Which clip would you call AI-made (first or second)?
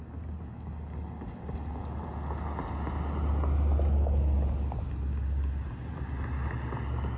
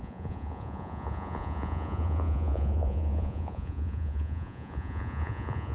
second